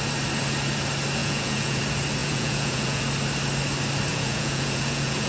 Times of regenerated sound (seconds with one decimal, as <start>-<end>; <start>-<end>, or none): 1.2-1.8; 2.2-3.0; 4.1-5.3